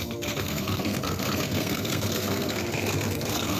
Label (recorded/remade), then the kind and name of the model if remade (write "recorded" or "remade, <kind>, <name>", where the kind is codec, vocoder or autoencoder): remade, codec, SNAC